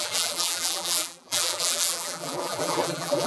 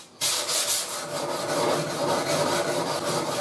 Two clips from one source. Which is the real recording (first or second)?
second